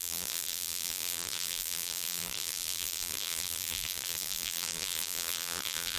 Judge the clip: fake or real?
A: fake